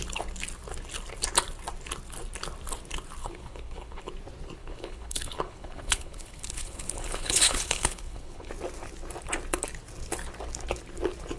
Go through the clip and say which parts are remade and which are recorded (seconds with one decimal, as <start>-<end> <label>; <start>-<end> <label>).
0.0-3.2 recorded; 3.2-4.1 remade; 4.1-4.6 recorded; 4.6-8.5 remade; 8.5-11.4 recorded